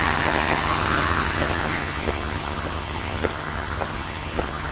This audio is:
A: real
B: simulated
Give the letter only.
B